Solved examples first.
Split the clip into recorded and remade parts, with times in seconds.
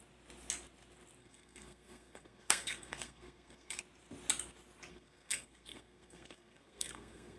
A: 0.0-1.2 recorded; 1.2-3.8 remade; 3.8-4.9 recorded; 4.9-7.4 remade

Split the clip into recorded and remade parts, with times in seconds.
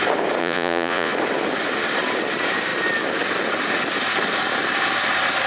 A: 0.0-0.4 recorded; 0.4-1.1 remade; 1.1-5.5 recorded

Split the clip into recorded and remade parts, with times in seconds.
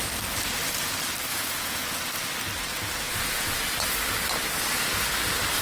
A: 0.0-1.3 recorded; 1.3-1.9 remade; 1.9-2.7 recorded; 2.7-3.6 remade; 3.6-5.6 recorded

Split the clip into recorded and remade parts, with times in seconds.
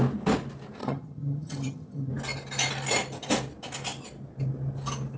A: 0.0-0.8 recorded; 0.8-2.1 remade; 2.1-5.2 recorded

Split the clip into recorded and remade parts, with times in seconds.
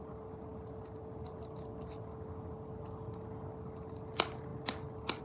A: 0.0-5.2 recorded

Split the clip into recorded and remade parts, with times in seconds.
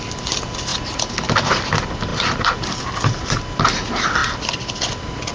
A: 0.0-5.3 recorded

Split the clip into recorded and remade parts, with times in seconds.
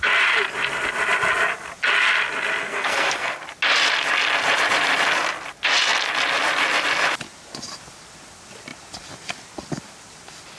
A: 0.0-2.6 recorded; 2.6-3.4 remade; 3.4-10.6 recorded